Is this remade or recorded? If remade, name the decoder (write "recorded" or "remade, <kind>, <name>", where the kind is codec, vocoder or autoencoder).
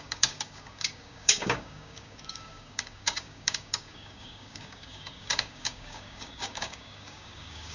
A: remade, codec, DAC